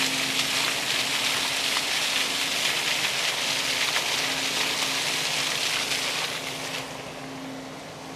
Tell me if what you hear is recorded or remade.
recorded